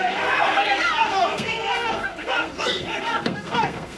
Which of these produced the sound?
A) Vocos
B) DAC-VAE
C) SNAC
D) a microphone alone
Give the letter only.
C